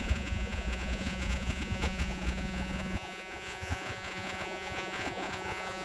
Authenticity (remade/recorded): remade